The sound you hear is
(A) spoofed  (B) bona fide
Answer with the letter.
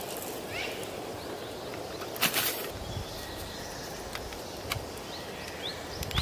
B